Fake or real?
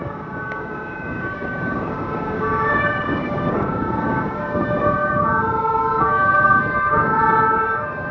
fake